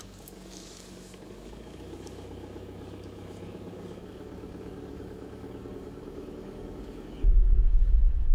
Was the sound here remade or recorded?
remade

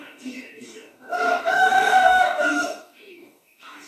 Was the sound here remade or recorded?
remade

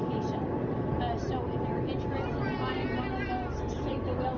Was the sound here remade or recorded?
recorded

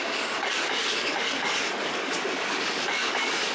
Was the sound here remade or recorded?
remade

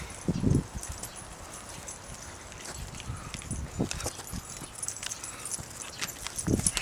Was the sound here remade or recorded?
recorded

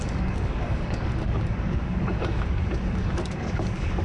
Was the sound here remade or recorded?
remade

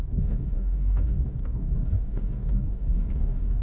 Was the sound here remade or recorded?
remade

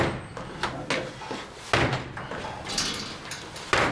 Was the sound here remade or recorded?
recorded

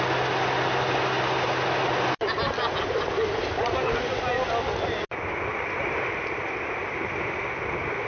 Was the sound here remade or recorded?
recorded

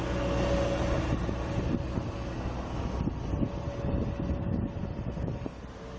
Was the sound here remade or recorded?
recorded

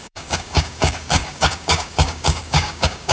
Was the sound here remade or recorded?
remade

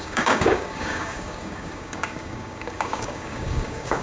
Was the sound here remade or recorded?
remade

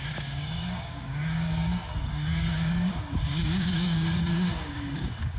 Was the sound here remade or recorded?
remade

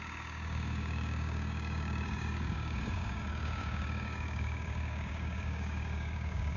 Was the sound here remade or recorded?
remade